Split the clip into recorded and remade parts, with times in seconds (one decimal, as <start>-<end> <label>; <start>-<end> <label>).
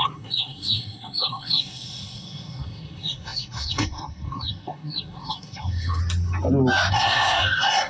0.0-6.0 remade; 6.0-6.9 recorded; 6.9-7.9 remade